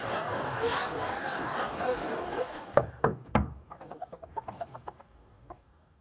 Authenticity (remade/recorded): remade